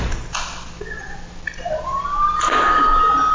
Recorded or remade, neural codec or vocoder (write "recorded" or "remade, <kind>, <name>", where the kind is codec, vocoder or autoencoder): recorded